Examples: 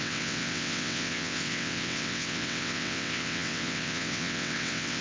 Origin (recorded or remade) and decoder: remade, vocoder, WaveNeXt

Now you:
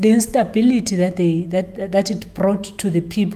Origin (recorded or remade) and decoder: remade, autoencoder, DAC-VAE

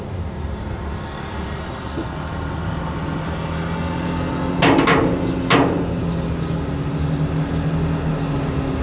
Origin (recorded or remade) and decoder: recorded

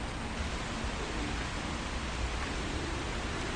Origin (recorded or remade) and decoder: recorded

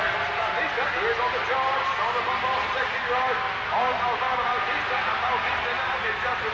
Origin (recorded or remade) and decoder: recorded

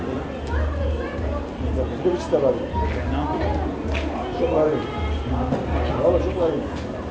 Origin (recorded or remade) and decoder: recorded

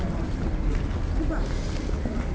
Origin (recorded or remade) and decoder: recorded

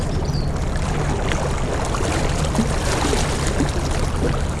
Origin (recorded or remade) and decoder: recorded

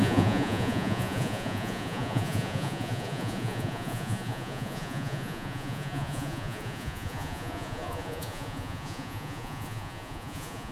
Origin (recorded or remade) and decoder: remade, vocoder, Vocos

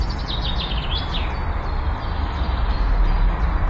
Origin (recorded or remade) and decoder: recorded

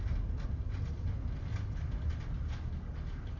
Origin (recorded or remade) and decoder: recorded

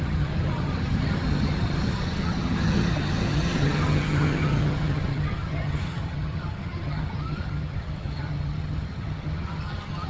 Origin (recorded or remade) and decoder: remade, vocoder, HiFi-GAN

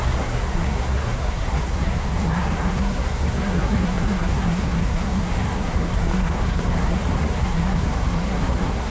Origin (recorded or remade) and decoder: remade, codec, SNAC